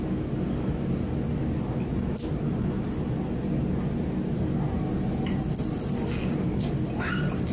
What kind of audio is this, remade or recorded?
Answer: recorded